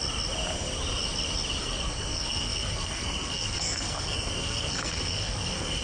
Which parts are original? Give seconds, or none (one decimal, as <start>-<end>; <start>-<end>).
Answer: 0.0-1.6